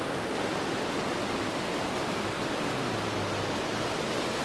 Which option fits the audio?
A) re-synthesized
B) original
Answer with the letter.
B